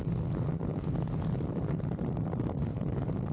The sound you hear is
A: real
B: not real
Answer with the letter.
A